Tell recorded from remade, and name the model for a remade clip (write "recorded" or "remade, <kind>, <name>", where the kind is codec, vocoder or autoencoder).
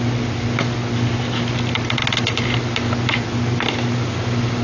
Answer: recorded